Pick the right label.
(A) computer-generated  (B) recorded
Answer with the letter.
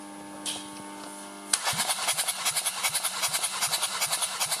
B